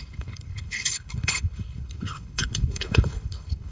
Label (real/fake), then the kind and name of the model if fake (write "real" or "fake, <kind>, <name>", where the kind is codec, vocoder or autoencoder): fake, codec, HILCodec